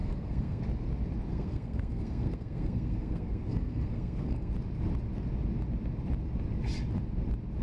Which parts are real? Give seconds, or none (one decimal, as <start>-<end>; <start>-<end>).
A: 0.6-1.3; 4.5-7.6